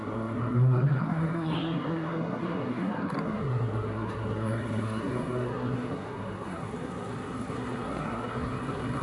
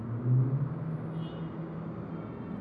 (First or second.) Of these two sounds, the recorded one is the second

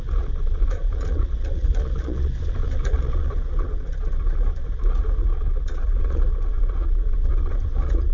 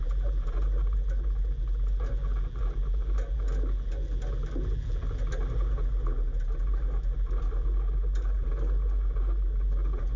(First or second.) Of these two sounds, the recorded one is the second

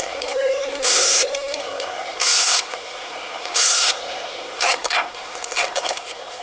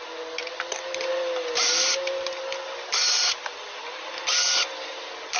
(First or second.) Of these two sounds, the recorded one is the second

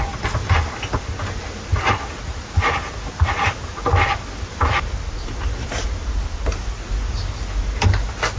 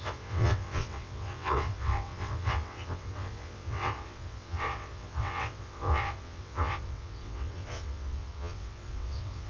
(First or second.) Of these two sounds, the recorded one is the first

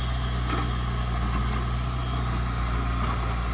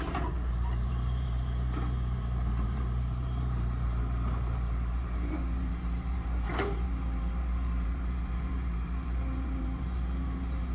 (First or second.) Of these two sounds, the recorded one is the first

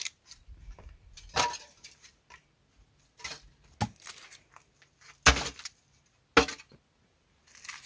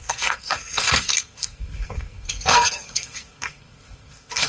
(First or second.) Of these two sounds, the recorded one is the first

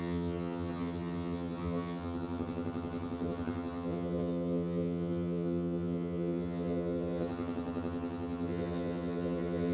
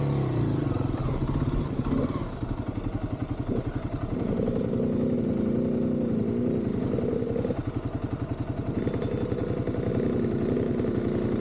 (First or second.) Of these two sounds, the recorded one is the second